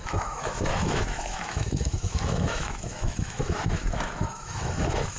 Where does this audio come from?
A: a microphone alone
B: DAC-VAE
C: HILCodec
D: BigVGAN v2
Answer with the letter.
B